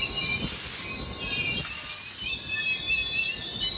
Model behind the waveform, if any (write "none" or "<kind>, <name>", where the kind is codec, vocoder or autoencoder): none